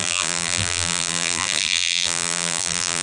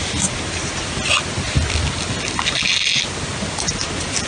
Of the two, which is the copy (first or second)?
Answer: first